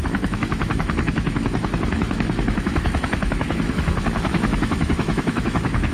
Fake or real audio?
fake